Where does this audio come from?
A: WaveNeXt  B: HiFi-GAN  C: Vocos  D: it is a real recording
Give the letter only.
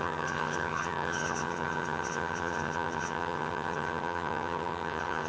B